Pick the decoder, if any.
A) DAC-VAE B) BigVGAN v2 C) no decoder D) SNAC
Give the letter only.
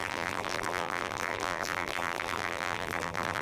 B